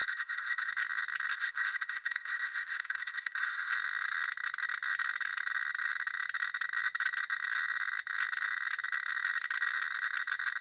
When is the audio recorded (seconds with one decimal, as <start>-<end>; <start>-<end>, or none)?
0.7-1.3; 3.7-10.6